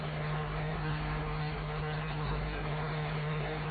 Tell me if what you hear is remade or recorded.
remade